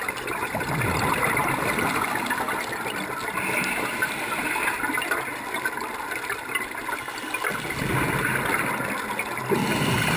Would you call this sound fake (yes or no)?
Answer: no